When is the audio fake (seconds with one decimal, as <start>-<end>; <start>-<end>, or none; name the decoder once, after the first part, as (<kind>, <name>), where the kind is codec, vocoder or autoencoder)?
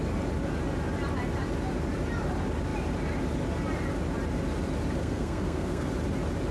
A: 5.0-5.9 (codec, SNAC)